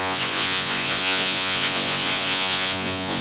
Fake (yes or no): yes